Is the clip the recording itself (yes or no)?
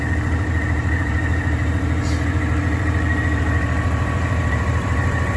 no